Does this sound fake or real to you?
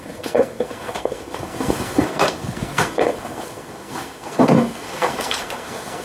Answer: fake